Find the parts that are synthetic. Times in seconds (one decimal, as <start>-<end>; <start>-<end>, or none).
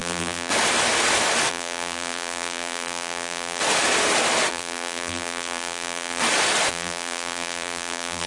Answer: 0.0-0.5; 1.5-3.6; 4.5-6.2; 6.7-8.3